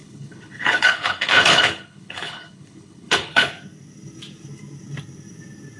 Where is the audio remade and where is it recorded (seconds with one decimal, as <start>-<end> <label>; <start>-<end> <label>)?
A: 0.0-3.5 remade; 3.5-5.8 recorded